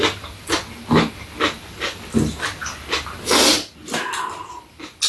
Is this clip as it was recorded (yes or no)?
yes